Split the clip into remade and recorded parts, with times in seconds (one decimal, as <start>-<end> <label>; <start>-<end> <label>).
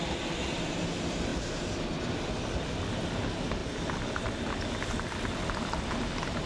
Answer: 0.0-6.5 recorded